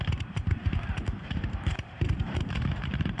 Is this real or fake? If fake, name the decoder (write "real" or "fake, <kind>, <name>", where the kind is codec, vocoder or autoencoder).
fake, vocoder, BigVGAN v2